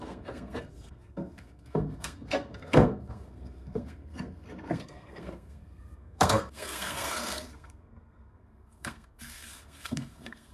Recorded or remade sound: remade